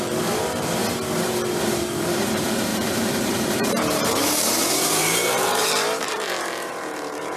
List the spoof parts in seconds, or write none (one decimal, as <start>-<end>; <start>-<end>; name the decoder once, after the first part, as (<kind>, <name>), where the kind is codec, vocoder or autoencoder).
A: 0.0-0.8 (vocoder, BigVGAN v2); 1.6-7.4